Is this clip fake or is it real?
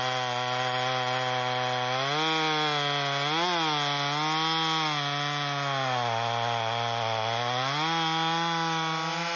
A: real